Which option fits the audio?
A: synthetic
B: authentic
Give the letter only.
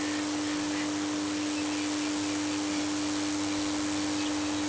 B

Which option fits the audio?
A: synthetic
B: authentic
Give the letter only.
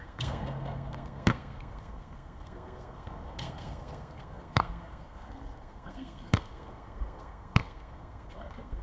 A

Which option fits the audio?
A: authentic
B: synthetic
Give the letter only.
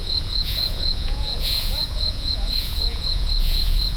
B